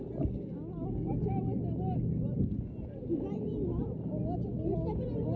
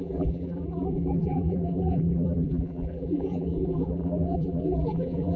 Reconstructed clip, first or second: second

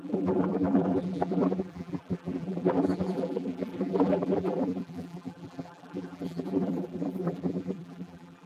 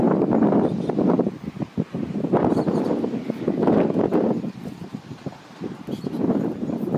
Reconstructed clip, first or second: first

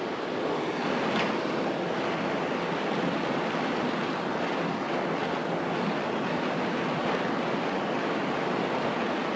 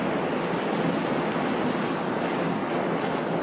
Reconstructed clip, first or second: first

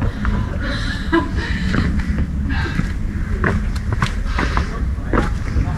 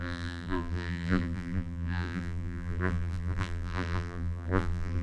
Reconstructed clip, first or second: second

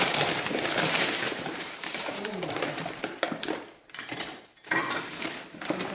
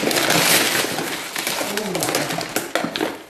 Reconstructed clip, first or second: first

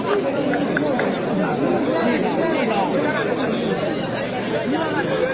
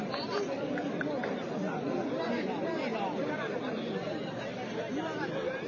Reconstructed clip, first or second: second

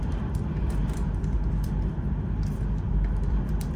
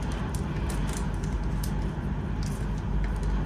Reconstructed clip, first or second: first